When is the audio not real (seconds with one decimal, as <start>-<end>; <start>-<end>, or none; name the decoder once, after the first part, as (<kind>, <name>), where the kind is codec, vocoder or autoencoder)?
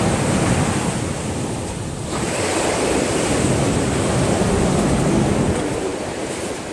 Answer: none